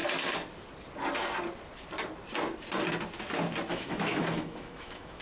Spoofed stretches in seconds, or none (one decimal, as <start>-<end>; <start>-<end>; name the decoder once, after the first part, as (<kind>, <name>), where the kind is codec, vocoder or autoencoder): 3.7-5.2 (autoencoder, DAC-VAE)